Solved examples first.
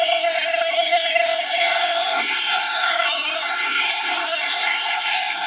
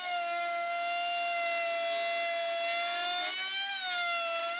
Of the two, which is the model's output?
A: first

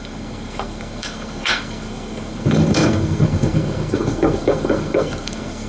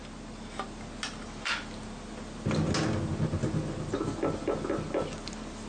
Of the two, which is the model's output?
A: first